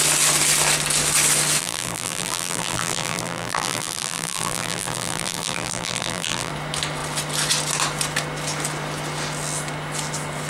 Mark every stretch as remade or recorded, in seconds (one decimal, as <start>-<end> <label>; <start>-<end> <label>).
0.0-1.6 recorded; 1.6-6.5 remade; 6.5-10.5 recorded